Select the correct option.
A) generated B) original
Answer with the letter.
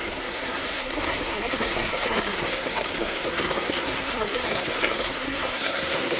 A